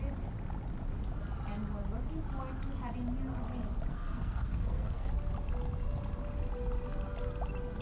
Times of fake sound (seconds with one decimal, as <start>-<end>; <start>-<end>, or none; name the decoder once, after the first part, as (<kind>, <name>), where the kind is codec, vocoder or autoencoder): 3.9-5.1 (codec, SNAC)